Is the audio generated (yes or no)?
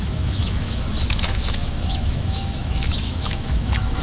yes